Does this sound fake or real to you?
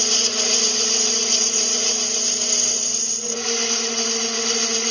real